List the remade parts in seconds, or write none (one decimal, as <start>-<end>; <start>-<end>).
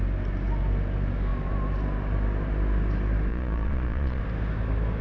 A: 3.3-4.2